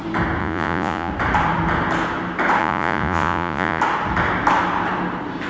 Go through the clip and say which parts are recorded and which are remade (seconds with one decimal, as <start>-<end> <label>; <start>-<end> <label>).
0.0-0.4 recorded; 0.4-1.1 remade; 1.1-2.6 recorded; 2.6-3.8 remade; 3.8-5.5 recorded